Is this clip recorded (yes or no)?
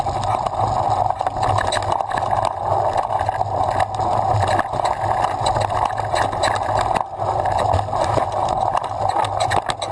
yes